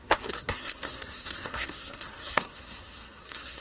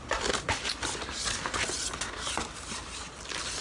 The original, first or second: second